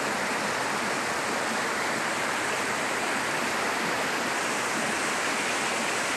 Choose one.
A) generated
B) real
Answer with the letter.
B